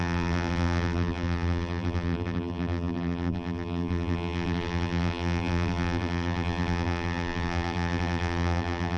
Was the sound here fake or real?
fake